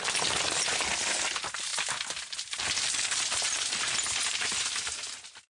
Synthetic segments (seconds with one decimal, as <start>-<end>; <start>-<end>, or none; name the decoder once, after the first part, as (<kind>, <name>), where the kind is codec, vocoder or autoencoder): none